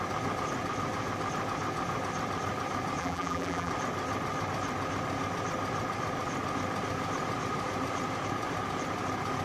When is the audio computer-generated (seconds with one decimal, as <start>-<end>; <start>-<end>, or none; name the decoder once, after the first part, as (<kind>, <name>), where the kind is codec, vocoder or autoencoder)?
3.0-3.7 (vocoder, BigVGAN v2)